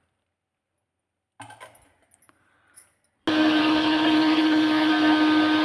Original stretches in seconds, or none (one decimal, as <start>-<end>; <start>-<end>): 0.0-3.6; 4.9-5.6

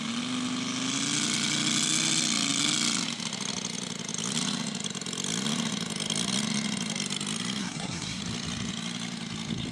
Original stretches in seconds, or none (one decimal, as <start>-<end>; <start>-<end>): 0.0-7.6; 8.2-9.7

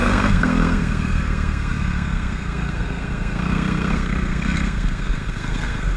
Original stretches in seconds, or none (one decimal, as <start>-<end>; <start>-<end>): none